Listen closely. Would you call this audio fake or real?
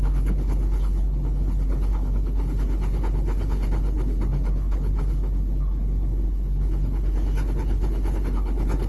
fake